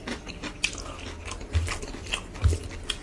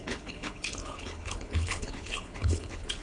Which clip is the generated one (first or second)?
second